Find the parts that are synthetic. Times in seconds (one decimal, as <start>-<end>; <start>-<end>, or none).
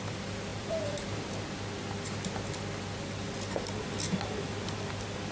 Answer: 0.5-1.3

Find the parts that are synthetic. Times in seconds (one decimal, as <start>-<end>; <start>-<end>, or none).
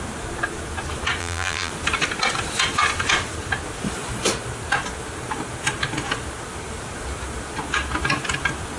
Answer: 1.2-1.7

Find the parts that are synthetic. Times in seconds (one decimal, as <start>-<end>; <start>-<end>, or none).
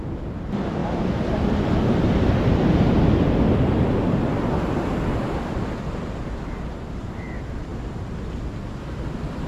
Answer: 0.8-1.8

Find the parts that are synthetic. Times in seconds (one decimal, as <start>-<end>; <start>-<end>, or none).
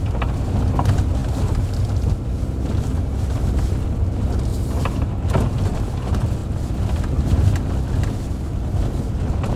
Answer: 4.5-5.2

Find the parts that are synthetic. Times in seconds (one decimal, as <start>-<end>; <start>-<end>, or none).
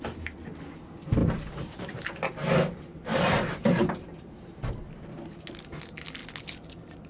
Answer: 1.2-1.9; 3.1-4.7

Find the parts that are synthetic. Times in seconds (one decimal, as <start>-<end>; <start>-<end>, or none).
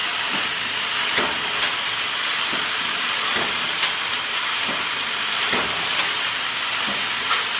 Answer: none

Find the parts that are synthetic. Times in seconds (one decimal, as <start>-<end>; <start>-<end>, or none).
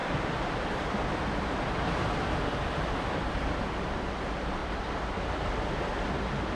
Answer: 0.0-4.0; 4.6-5.3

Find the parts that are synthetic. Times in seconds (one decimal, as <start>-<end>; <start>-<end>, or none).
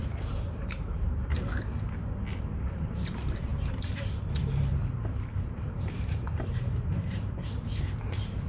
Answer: 0.0-1.7; 2.4-8.5